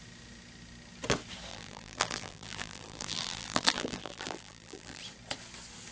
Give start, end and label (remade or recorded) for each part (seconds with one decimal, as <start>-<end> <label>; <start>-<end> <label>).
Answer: 0.0-1.5 recorded; 1.5-5.0 remade; 5.0-5.9 recorded

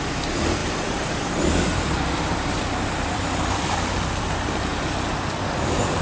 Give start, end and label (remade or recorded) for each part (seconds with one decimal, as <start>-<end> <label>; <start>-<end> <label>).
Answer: 0.0-4.7 remade; 4.7-5.4 recorded; 5.4-6.0 remade

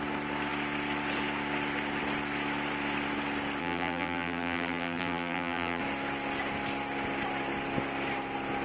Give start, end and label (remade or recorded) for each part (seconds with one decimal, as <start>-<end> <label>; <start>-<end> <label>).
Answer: 0.0-3.6 recorded; 3.6-5.8 remade; 5.8-8.6 recorded

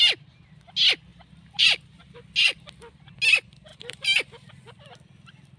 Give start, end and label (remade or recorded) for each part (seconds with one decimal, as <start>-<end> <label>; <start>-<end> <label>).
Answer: 0.0-1.1 recorded; 1.1-2.2 remade; 2.2-3.7 recorded; 3.7-4.5 remade; 4.5-5.6 recorded

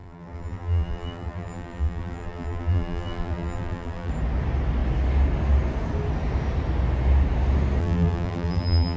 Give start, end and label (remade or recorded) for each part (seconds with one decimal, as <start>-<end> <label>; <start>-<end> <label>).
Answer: 0.0-4.1 remade; 4.1-7.8 recorded; 7.8-9.0 remade